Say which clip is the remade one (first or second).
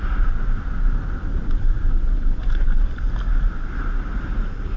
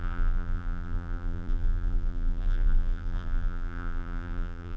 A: second